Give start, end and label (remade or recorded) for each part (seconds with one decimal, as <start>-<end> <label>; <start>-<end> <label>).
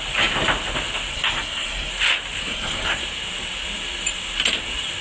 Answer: 0.0-1.1 recorded; 1.1-1.9 remade; 1.9-2.4 recorded; 2.4-3.0 remade; 3.0-5.0 recorded